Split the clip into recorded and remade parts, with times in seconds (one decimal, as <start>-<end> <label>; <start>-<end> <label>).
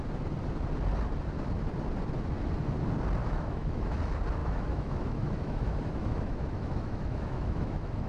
0.0-3.2 recorded; 3.2-4.0 remade; 4.0-4.4 recorded; 4.4-8.1 remade